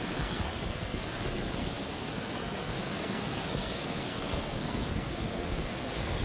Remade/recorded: remade